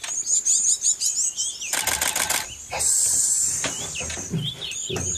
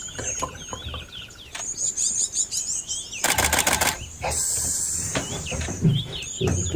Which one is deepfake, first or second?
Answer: second